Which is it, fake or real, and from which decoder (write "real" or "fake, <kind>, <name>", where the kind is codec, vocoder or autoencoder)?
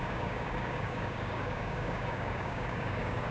fake, codec, DAC